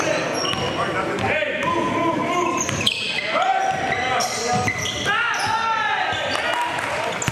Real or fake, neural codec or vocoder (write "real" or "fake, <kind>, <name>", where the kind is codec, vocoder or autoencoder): real